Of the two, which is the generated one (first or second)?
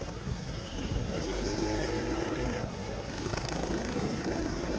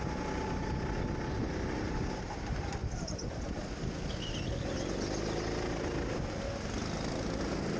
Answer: first